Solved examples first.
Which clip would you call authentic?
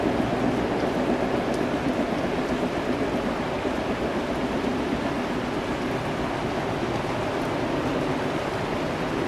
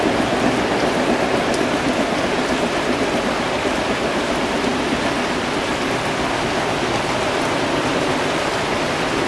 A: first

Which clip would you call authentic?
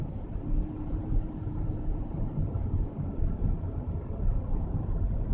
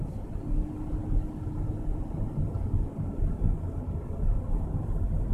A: second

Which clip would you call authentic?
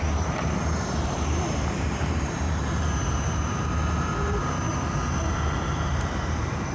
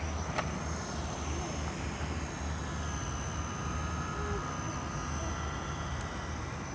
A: second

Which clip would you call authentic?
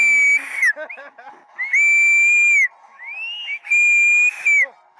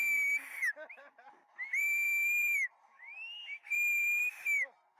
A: first